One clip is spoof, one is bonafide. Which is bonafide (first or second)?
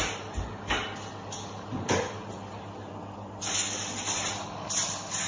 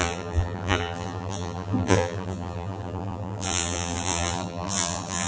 first